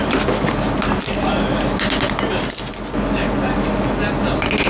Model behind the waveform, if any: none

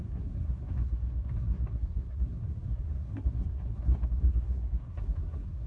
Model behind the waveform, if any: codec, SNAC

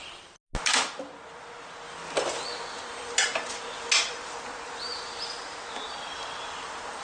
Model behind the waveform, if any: none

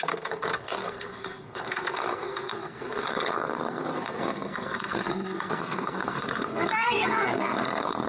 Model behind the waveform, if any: codec, SNAC